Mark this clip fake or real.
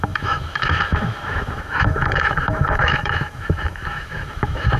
fake